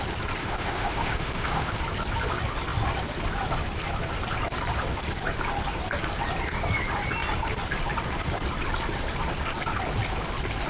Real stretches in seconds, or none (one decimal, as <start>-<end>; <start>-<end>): 0.0-0.4; 1.8-10.7